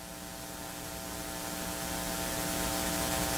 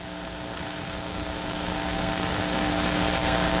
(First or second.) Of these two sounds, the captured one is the first